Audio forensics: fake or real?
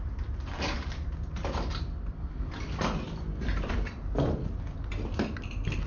fake